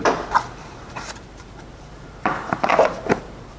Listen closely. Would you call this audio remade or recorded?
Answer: remade